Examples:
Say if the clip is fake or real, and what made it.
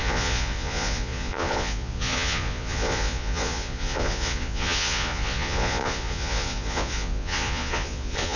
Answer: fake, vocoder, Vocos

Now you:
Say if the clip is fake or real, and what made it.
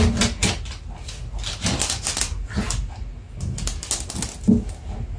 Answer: real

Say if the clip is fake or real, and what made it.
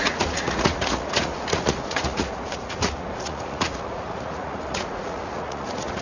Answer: fake, vocoder, Vocos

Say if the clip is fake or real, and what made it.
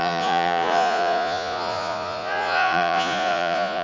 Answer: fake, vocoder, Vocos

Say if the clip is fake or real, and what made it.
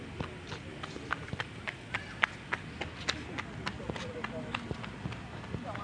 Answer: real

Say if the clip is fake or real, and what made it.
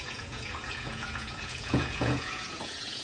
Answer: fake, vocoder, Vocos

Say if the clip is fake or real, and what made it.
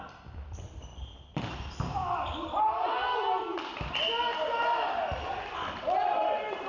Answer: real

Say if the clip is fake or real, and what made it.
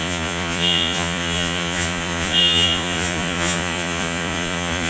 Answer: fake, vocoder, Vocos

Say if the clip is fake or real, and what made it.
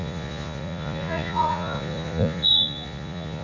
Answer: fake, vocoder, Vocos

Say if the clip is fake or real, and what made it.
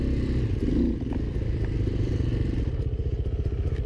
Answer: real